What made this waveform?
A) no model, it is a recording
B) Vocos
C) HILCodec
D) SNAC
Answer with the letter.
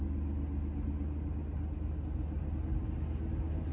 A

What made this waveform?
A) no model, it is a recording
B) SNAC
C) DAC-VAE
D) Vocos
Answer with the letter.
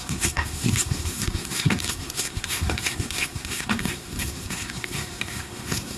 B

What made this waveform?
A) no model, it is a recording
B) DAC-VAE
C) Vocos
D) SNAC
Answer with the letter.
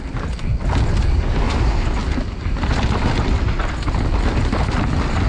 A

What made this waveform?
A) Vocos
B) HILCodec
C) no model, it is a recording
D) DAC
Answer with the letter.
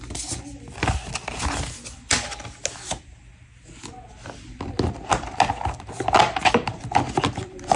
C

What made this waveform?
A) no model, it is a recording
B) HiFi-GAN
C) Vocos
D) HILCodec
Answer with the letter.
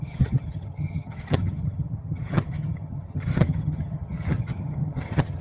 B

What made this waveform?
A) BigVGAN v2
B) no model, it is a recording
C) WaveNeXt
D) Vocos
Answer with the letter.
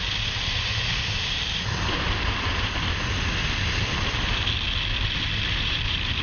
B